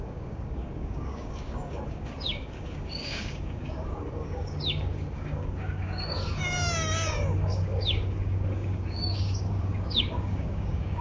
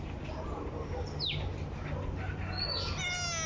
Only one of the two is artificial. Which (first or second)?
first